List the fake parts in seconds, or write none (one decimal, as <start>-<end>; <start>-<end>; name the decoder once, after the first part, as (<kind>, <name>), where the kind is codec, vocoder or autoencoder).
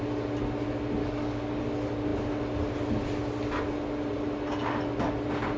1.0-1.6 (codec, DAC)